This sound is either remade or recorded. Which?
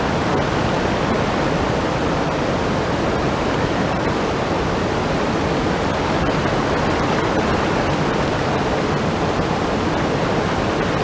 recorded